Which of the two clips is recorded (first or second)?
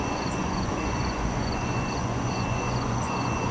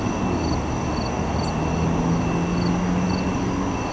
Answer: second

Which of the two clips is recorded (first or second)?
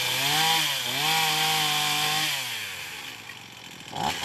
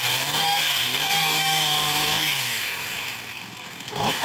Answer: first